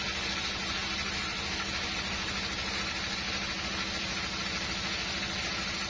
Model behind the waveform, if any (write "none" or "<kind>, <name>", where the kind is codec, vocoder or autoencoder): none